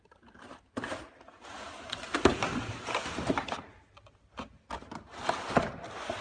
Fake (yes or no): no